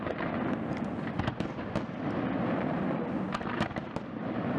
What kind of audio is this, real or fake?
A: real